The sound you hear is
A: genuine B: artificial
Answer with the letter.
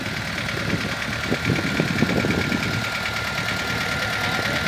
A